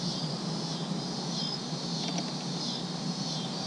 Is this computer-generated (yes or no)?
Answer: no